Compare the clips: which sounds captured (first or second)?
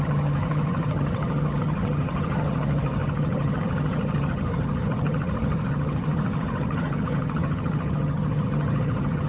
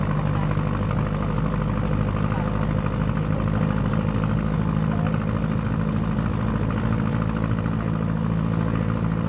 second